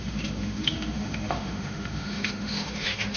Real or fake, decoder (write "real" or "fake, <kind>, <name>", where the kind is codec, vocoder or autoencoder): fake, autoencoder, DAC-VAE